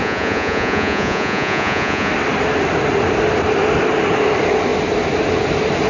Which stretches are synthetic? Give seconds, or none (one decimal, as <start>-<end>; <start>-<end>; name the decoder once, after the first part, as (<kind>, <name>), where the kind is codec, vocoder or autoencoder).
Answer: 0.0-2.1 (vocoder, Vocos)